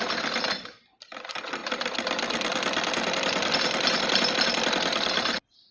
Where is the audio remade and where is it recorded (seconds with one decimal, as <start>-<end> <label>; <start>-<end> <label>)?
0.0-1.6 recorded; 1.6-4.3 remade; 4.3-5.7 recorded